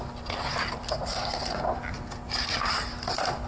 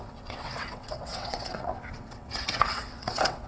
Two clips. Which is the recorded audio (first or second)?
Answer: first